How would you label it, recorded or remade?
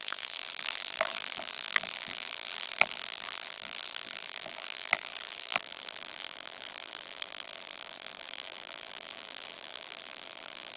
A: remade